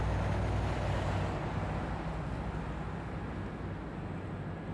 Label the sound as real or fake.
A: real